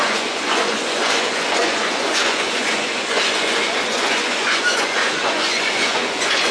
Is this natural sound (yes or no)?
no